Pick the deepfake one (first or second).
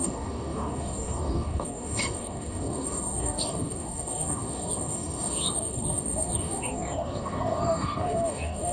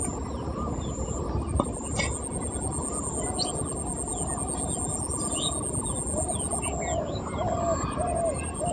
first